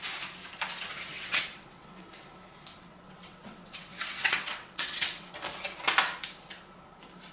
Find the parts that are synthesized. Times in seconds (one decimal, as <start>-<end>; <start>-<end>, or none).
1.1-2.1; 2.7-5.3